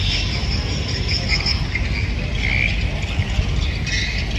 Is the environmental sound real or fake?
real